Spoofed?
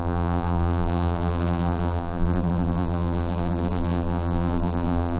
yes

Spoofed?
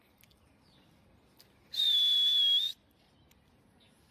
no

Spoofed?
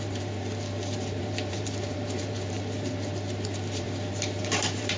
yes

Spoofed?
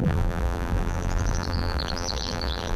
yes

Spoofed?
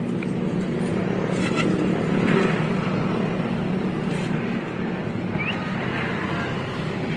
no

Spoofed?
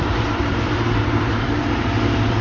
yes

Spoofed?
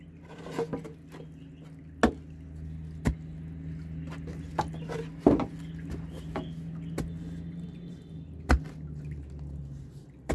no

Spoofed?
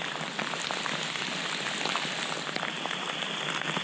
no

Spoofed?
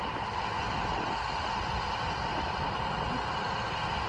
no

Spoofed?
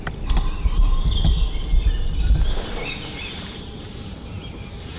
yes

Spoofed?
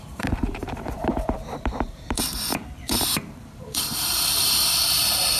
yes